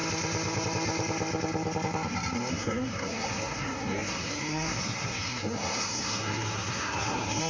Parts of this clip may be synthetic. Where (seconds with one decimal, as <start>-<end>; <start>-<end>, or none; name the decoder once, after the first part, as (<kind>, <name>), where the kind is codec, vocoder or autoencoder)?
2.5-7.5 (codec, SNAC)